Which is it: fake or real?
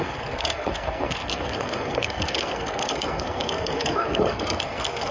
fake